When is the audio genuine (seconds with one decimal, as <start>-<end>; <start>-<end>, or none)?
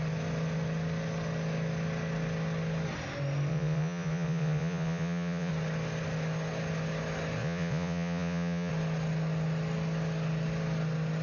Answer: 0.0-3.5; 5.5-7.4; 8.7-11.2